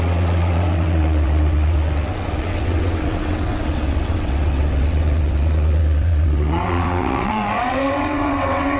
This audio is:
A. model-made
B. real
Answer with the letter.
A